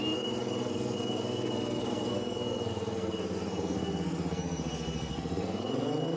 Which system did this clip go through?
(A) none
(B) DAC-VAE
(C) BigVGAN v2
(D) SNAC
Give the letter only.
D